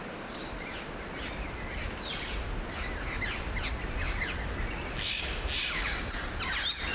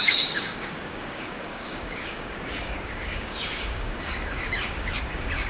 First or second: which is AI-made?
second